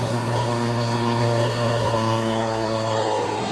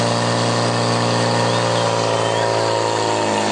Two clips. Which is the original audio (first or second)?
second